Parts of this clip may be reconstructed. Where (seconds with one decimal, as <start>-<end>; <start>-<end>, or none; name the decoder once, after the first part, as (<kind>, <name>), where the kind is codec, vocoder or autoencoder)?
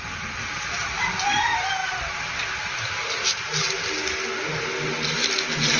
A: none